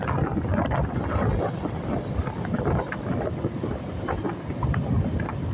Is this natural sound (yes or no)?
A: yes